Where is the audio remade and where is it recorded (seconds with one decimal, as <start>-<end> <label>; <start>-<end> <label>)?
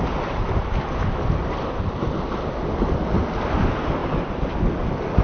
0.0-5.2 recorded